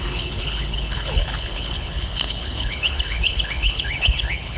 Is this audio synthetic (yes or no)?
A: yes